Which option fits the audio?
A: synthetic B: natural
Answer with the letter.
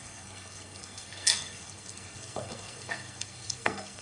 A